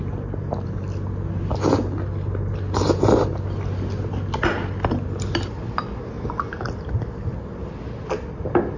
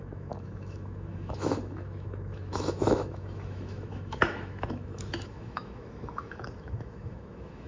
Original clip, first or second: first